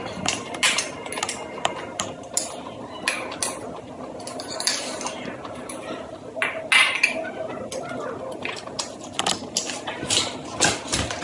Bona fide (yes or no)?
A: yes